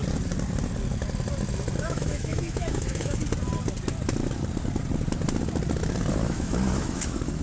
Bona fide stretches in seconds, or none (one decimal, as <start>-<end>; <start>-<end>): 0.0-1.8; 3.2-6.1

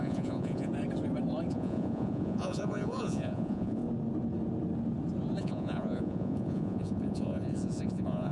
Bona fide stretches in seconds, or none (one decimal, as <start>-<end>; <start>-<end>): 0.7-1.5; 3.8-5.4

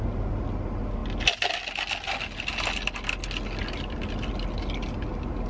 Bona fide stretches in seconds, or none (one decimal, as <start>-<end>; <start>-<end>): 0.0-5.5

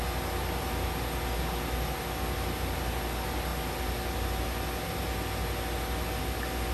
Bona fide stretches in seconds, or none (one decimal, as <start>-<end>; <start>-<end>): 0.0-6.7